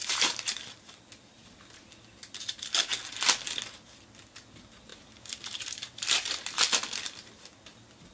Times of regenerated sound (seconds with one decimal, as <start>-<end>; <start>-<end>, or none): 0.0-0.6; 4.9-6.6